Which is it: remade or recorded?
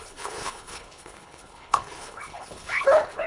remade